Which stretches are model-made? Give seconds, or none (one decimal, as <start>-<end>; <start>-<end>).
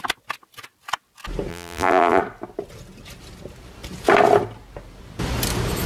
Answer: 1.5-2.2